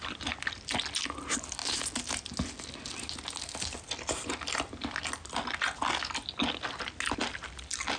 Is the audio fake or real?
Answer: real